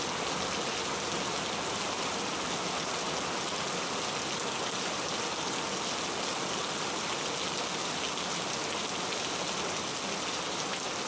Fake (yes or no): no